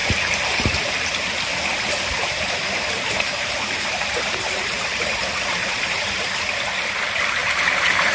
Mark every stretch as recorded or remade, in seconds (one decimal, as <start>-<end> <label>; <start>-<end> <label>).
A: 0.0-0.9 remade; 0.9-1.7 recorded; 1.7-6.3 remade; 6.3-7.4 recorded; 7.4-8.1 remade